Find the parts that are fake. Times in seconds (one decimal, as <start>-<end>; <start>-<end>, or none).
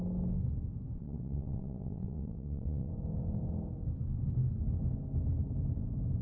1.0-2.9